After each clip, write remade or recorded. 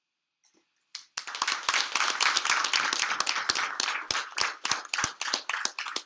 recorded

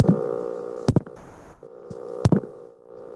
remade